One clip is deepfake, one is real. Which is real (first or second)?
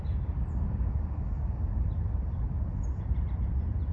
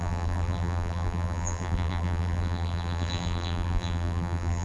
first